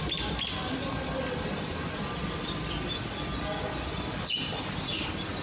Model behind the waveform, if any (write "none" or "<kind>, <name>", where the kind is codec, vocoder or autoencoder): none